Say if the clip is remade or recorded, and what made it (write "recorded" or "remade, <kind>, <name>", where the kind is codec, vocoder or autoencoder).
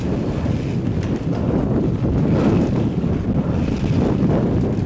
recorded